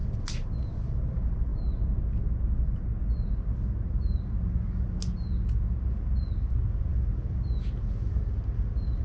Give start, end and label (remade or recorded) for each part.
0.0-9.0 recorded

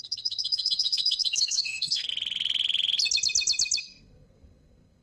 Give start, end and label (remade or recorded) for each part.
0.0-2.1 remade; 2.1-3.8 recorded; 3.8-5.0 remade

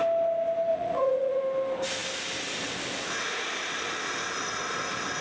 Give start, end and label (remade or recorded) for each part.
0.0-0.7 recorded; 0.7-1.4 remade; 1.4-5.2 recorded

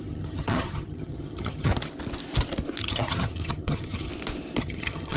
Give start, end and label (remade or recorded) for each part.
0.0-1.7 remade; 1.7-2.8 recorded; 2.8-4.1 remade; 4.1-4.6 recorded; 4.6-5.2 remade

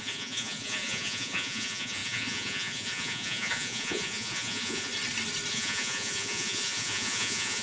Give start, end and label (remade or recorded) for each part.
0.0-4.9 remade; 4.9-5.5 recorded; 5.5-7.6 remade

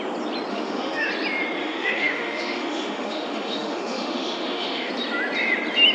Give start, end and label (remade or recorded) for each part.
0.0-0.5 recorded; 0.5-1.1 remade; 1.1-1.6 recorded; 1.6-4.9 remade; 4.9-5.9 recorded

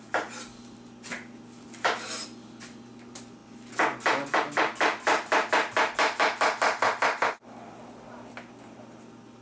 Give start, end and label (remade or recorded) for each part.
0.0-9.4 recorded